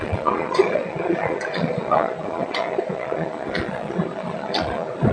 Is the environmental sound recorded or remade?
remade